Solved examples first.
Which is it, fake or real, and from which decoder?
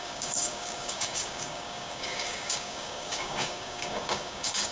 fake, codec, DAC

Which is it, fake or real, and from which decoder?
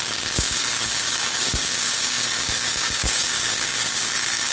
fake, codec, DAC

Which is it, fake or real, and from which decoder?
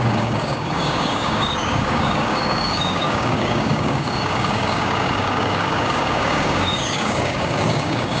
fake, codec, DAC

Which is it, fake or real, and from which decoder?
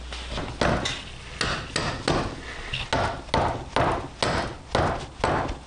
real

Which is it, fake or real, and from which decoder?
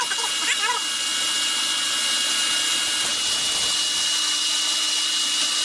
real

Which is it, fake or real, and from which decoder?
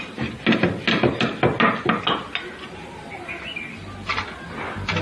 real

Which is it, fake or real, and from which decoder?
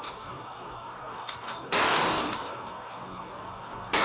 fake, codec, DAC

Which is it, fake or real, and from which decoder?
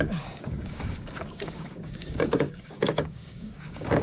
fake, codec, DAC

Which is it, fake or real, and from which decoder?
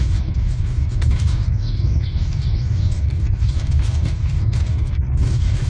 fake, codec, DAC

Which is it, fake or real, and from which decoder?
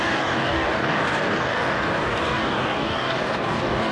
fake, codec, DAC